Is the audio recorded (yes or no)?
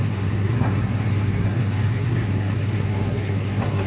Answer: no